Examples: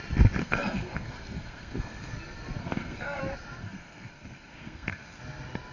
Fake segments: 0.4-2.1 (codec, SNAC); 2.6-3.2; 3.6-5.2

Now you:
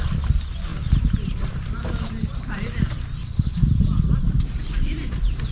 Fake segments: none